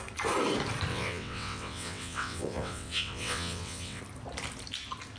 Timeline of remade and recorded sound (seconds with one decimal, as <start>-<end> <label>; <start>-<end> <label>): 0.0-0.9 recorded; 0.9-4.0 remade; 4.0-5.2 recorded